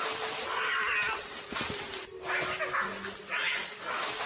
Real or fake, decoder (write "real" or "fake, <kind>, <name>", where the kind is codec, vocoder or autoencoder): real